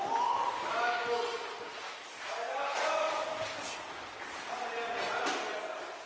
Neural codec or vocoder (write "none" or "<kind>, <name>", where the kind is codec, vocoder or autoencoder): none